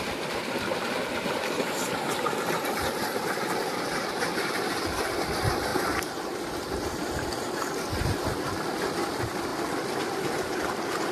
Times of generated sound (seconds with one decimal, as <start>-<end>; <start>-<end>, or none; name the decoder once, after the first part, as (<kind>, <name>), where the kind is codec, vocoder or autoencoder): 5.7-7.9 (vocoder, BigVGAN v2); 9.5-11.1